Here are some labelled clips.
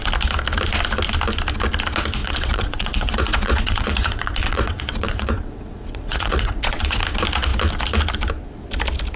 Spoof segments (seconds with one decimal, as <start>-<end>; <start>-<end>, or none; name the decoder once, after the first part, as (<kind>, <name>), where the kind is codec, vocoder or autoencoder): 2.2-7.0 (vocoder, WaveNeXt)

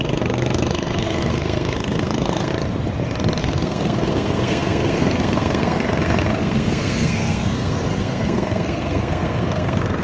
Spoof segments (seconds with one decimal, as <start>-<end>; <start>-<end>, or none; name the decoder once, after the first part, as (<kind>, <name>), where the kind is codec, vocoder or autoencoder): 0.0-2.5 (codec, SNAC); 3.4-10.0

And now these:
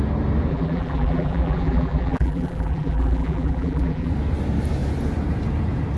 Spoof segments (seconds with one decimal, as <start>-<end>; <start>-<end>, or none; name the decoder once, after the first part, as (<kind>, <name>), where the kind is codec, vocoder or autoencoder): 0.5-4.1 (vocoder, BigVGAN v2)